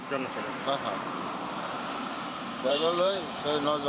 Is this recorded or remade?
remade